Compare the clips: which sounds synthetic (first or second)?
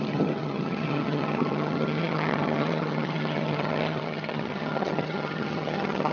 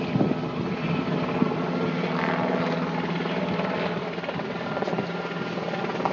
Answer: first